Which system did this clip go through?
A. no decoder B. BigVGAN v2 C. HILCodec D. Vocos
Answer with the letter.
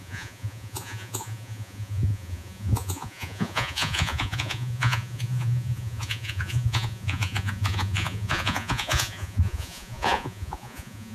D